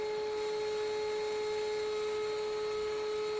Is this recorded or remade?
recorded